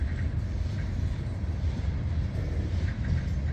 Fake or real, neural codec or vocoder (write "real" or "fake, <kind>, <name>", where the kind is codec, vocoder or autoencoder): real